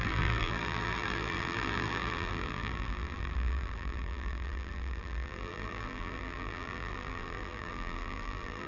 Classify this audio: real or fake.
fake